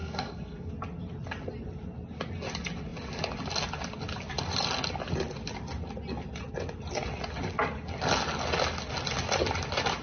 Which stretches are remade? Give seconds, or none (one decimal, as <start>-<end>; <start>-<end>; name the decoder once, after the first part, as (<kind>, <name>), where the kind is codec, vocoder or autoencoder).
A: 0.0-0.7 (codec, SNAC)